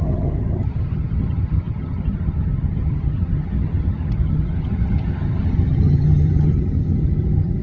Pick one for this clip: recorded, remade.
remade